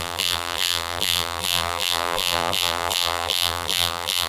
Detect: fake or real fake